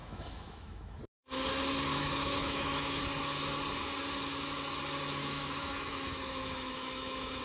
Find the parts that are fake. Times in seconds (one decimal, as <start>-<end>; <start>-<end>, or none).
0.0-1.0; 1.9-3.0; 5.2-7.4